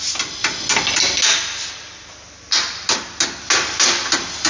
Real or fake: real